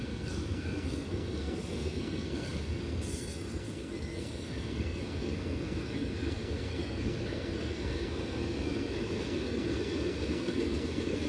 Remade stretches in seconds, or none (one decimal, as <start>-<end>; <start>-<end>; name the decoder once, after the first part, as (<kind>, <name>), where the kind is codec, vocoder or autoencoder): 0.0-11.3 (codec, SNAC)